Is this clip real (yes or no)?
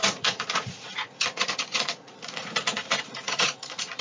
no